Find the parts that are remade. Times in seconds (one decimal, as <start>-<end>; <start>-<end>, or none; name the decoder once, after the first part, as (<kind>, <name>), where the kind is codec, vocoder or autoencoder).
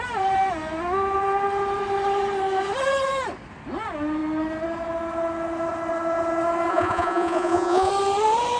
6.7-7.9 (vocoder, Vocos)